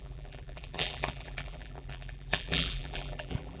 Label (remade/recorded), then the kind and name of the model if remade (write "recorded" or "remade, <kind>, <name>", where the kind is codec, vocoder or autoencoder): remade, vocoder, BigVGAN v2